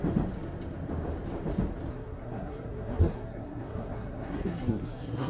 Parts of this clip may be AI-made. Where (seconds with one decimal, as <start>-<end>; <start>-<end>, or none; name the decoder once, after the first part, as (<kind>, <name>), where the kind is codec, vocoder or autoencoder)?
1.9-5.3 (codec, SNAC)